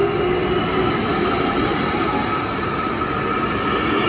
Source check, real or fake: real